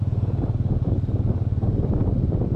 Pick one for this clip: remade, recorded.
recorded